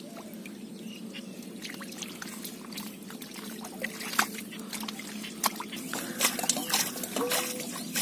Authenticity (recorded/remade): recorded